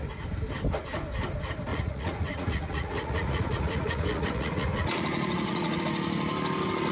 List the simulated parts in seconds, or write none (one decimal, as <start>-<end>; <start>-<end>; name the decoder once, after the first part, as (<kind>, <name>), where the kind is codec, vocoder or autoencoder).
1.7-5.8 (vocoder, Vocos)